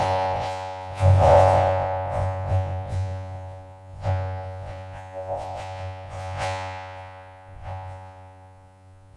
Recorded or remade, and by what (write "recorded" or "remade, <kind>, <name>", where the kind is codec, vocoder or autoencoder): remade, vocoder, Vocos